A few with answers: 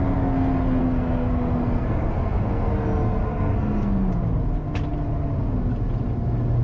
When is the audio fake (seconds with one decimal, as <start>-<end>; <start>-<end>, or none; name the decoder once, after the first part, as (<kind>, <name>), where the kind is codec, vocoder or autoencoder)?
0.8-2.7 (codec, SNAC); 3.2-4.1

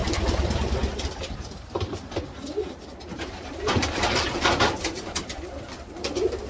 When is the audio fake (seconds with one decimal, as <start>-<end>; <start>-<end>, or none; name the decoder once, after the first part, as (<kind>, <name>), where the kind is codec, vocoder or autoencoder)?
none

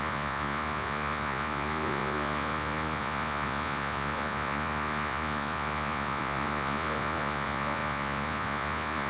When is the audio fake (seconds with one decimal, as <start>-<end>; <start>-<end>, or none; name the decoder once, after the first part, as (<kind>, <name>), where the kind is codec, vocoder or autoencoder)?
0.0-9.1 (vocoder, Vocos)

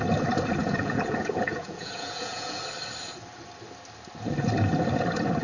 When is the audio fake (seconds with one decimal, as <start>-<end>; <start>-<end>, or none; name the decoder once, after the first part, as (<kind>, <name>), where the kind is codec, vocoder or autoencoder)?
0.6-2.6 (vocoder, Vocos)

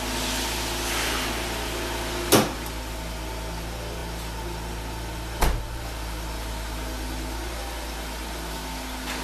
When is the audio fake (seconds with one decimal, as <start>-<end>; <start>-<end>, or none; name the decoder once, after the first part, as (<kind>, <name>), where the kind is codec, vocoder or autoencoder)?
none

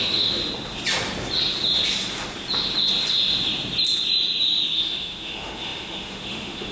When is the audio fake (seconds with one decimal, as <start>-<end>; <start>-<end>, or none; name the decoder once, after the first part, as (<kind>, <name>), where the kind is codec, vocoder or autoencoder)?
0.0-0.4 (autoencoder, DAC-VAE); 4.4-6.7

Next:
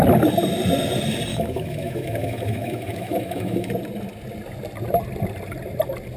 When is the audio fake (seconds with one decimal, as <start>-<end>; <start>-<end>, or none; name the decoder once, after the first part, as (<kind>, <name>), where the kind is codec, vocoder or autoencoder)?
1.3-3.7 (autoencoder, DAC-VAE)